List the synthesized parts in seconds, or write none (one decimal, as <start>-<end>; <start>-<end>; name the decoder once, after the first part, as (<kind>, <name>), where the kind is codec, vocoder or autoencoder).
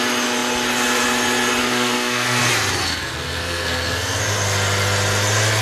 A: 1.6-2.4 (codec, SNAC); 2.8-4.2